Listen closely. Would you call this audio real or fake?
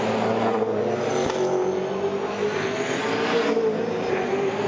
real